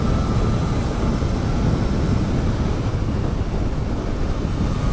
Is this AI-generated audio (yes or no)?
no